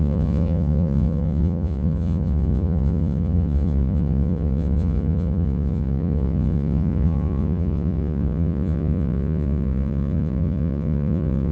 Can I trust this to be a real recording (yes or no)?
no